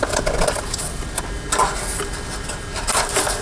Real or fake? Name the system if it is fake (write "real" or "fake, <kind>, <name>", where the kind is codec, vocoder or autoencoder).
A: real